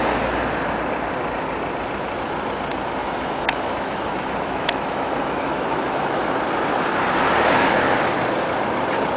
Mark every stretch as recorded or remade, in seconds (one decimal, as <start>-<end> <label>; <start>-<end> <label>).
0.0-3.0 recorded; 3.0-6.4 remade; 6.4-9.2 recorded